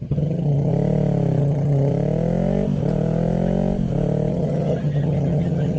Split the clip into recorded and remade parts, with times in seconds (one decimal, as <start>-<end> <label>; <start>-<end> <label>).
0.0-0.7 remade; 0.7-1.4 recorded; 1.4-1.9 remade; 1.9-4.3 recorded; 4.3-5.8 remade